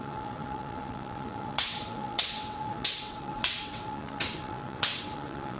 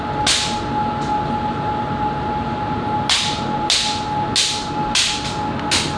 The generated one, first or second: first